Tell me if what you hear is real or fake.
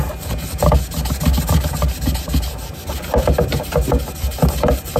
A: real